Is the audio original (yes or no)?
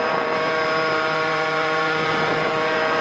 no